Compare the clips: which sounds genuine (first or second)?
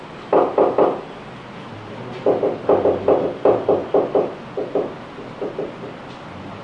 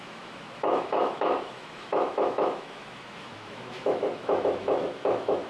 first